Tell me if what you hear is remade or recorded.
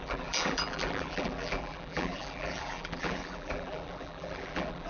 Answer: remade